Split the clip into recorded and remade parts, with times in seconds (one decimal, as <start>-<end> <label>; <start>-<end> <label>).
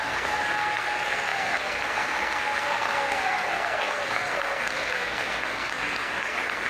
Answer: 0.0-6.7 remade